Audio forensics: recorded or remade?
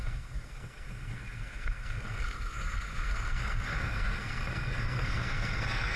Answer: remade